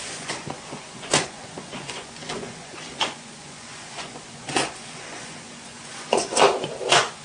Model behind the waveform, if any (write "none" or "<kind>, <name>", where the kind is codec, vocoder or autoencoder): vocoder, Vocos